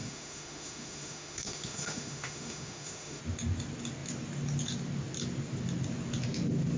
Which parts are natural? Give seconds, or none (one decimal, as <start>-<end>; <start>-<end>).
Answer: 3.2-6.8